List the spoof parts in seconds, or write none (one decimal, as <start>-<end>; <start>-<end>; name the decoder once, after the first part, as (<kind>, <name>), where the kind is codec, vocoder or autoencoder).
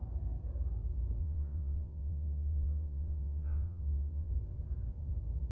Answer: 1.2-4.3 (vocoder, WaveNeXt)